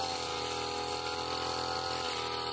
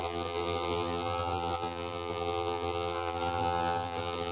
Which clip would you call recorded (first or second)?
first